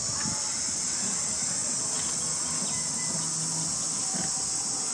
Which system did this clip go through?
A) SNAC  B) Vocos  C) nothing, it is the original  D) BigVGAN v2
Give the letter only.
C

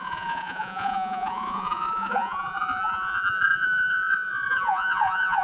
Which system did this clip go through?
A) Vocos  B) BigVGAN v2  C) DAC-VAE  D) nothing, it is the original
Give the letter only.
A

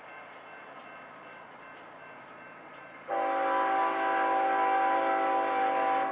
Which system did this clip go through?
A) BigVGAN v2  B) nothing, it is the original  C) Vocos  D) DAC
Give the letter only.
B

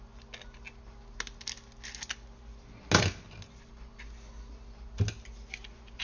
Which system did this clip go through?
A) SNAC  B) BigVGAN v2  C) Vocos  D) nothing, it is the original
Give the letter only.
D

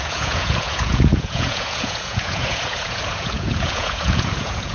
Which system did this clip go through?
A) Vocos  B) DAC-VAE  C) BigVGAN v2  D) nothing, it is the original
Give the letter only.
A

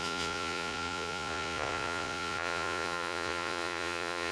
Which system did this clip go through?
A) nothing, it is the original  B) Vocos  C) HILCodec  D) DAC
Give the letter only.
B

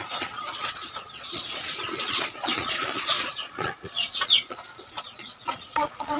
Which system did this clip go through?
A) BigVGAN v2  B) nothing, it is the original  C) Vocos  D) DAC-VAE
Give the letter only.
C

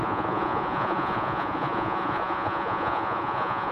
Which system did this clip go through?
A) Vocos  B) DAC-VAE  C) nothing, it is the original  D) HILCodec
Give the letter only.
A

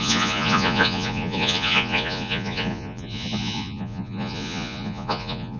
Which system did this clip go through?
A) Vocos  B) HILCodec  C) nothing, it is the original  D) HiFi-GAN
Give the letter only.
A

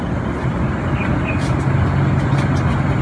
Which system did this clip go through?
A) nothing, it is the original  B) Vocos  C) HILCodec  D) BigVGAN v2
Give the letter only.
A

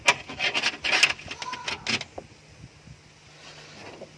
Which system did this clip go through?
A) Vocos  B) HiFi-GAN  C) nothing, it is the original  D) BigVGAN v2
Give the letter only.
C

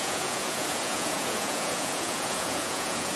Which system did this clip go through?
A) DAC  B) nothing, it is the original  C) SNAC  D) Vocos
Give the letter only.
D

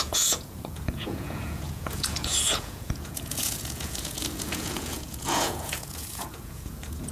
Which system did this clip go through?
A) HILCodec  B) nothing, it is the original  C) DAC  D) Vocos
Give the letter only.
D